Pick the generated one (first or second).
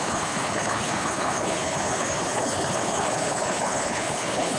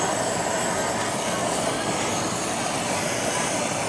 first